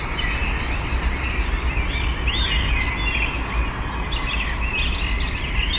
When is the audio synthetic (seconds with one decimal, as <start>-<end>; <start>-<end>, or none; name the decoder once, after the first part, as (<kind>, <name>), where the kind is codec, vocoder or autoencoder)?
none